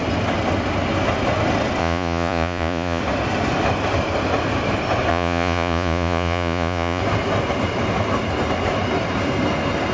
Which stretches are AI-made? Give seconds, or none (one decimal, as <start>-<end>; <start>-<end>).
1.8-3.0; 5.1-7.0